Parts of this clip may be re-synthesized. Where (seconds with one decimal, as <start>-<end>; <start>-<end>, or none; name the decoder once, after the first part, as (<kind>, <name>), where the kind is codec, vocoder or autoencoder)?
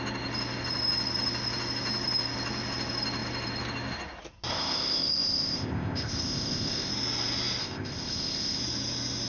4.5-6.9 (codec, ZipCodec); 7.6-8.6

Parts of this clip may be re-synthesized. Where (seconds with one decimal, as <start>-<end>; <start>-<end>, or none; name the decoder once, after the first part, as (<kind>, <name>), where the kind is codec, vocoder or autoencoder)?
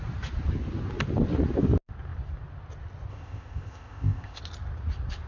3.1-4.4 (codec, ZipCodec)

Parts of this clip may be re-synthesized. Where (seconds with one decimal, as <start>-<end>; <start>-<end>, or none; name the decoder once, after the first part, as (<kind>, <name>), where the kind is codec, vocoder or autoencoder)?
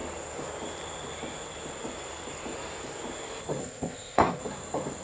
3.6-4.4 (codec, ZipCodec)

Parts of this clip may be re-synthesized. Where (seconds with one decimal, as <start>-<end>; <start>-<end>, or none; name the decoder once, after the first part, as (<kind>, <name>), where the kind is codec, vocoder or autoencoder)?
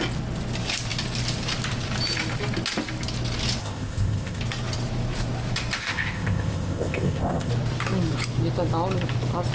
3.6-4.4 (codec, ZipCodec); 5.8-7.5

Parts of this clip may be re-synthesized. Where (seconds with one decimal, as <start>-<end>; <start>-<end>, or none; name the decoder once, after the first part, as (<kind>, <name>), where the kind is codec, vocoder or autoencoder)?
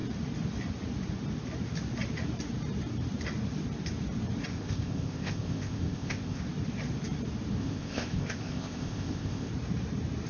4.5-6.4 (codec, ZipCodec); 7.6-9.5